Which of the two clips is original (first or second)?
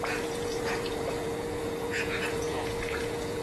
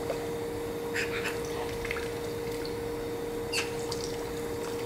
second